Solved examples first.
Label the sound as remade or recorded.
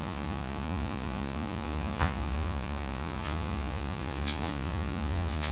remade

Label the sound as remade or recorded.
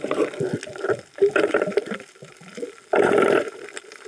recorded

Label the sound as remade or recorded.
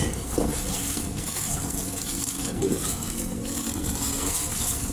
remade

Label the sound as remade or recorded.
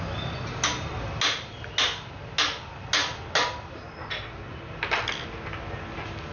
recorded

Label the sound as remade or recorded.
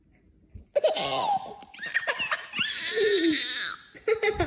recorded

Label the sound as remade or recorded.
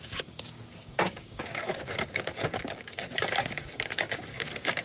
remade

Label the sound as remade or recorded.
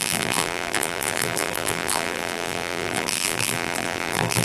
remade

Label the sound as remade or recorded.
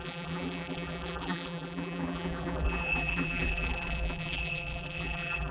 remade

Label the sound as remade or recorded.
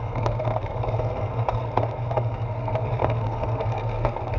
remade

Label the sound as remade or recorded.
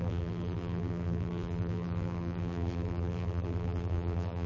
remade